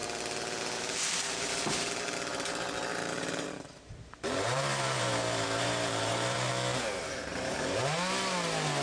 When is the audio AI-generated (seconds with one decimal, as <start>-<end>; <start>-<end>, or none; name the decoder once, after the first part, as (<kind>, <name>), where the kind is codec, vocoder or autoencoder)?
2.3-6.5 (vocoder, BigVGAN v2); 7.3-7.8